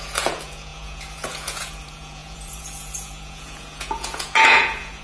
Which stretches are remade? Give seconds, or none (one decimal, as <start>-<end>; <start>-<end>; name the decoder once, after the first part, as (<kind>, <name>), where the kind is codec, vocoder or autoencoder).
0.0-5.0 (vocoder, Vocos)